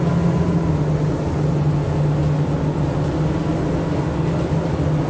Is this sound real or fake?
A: real